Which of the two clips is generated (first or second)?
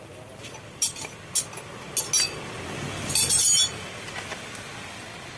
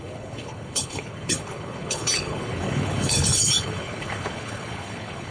second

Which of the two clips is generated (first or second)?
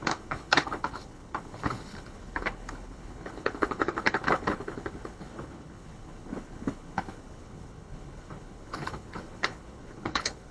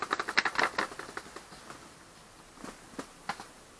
first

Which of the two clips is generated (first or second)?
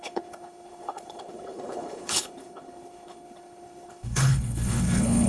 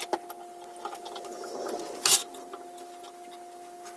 first